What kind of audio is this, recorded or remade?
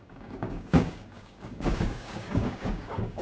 remade